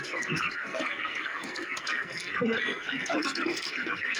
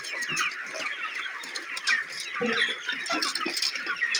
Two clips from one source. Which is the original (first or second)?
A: second